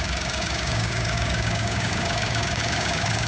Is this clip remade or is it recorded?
remade